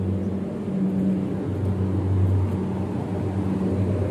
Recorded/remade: recorded